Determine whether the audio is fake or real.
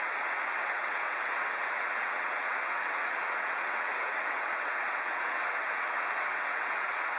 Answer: fake